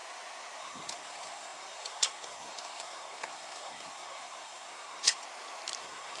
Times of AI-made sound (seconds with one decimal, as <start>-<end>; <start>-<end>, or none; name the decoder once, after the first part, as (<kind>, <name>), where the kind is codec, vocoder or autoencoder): 0.6-5.2 (codec, SNAC); 5.8-6.2